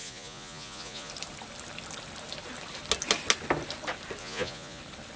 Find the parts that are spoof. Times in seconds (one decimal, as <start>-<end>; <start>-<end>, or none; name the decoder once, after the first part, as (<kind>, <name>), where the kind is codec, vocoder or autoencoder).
0.0-1.1 (vocoder, Vocos); 4.2-4.8